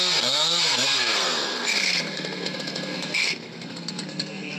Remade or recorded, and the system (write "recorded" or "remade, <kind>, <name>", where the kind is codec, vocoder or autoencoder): remade, codec, SNAC